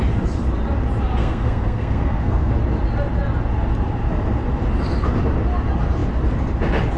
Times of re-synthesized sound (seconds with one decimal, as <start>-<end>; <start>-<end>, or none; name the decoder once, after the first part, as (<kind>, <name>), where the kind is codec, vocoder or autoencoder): 1.2-2.5 (codec, SNAC)